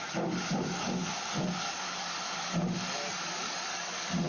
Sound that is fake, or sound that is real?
fake